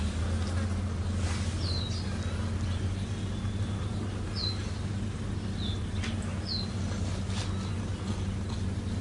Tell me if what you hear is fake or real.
real